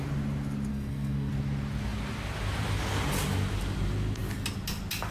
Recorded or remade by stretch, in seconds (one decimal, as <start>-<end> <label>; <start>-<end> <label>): 0.0-0.7 recorded; 0.7-1.3 remade; 1.3-5.1 recorded